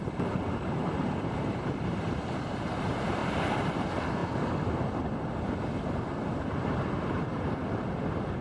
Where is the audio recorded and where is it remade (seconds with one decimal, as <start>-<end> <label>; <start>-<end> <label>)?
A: 0.0-3.2 remade; 3.2-3.8 recorded; 3.8-4.2 remade; 4.2-6.4 recorded; 6.4-7.6 remade; 7.6-8.4 recorded